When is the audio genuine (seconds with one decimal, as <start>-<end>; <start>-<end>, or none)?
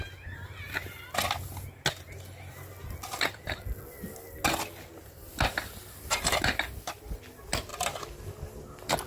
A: 0.0-9.1